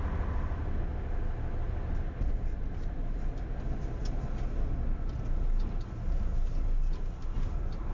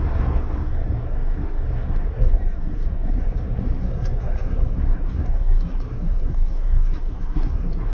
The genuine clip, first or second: first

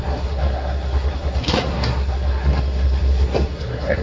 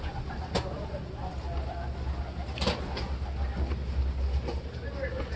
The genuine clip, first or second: second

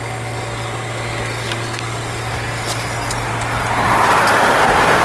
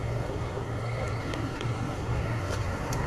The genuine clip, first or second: first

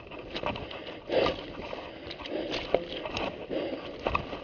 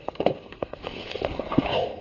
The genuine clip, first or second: first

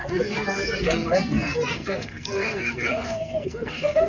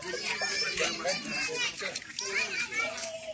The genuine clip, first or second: second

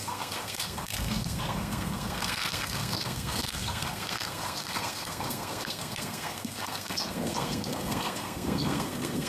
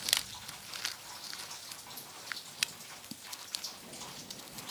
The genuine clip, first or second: second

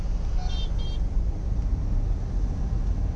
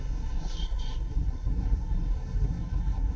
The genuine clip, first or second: first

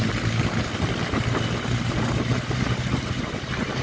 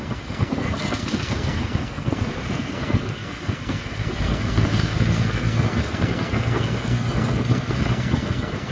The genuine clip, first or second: first